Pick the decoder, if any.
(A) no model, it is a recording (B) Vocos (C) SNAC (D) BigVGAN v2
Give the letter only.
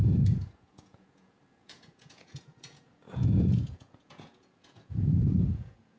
B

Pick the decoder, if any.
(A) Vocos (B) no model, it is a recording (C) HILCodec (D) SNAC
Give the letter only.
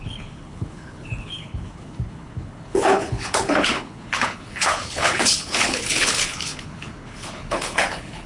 C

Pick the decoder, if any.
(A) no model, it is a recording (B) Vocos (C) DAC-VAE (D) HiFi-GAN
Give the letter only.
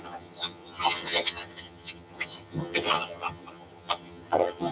D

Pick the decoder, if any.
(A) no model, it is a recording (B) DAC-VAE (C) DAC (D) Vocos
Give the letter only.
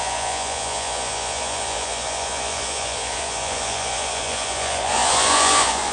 D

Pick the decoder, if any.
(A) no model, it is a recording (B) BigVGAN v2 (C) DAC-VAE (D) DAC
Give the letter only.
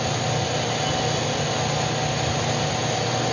A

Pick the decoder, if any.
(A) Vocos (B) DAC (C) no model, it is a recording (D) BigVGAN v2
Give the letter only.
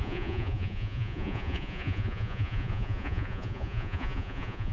A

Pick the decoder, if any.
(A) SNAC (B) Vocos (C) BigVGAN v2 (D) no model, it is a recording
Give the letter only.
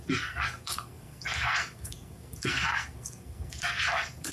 A